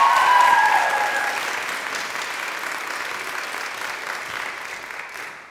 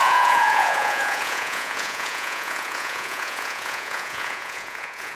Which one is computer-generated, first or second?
second